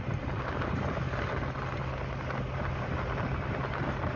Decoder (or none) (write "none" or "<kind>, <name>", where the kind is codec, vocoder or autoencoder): none